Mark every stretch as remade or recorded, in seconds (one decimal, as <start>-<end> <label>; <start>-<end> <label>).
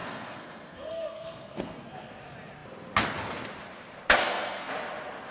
0.0-2.1 remade; 2.1-4.2 recorded; 4.2-4.7 remade; 4.7-5.3 recorded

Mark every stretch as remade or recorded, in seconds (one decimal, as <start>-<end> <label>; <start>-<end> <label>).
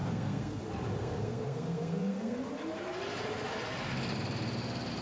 0.0-0.6 remade; 0.6-1.0 recorded; 1.0-2.4 remade; 2.4-5.0 recorded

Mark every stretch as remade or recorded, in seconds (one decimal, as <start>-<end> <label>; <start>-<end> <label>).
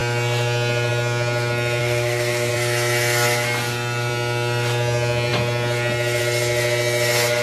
0.0-1.8 recorded; 1.8-2.5 remade; 2.5-7.4 recorded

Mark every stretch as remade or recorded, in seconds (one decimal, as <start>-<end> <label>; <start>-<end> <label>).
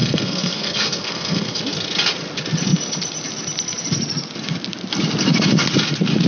0.0-1.6 remade; 1.6-6.3 recorded